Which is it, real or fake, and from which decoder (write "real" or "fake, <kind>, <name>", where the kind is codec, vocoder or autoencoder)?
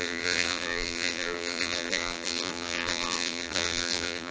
fake, vocoder, BigVGAN v2